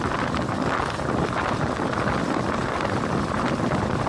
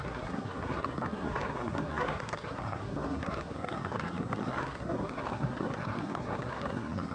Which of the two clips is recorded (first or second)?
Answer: first